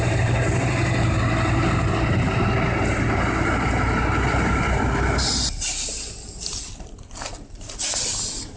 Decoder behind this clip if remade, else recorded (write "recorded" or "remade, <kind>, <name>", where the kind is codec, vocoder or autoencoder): recorded